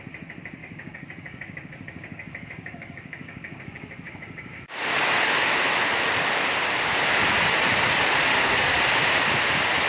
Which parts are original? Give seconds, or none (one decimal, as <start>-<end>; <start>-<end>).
0.0-0.6; 4.6-8.3; 8.9-9.9